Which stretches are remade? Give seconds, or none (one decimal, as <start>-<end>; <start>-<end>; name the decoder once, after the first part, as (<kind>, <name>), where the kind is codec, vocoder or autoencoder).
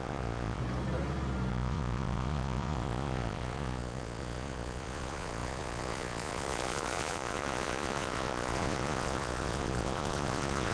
0.0-0.6 (vocoder, Vocos); 1.5-10.7